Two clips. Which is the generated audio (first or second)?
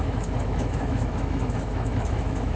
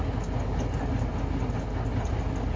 first